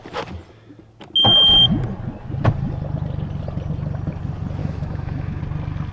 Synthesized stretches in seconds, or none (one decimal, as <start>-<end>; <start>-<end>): 4.6-5.4